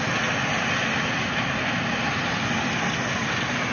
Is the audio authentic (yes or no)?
yes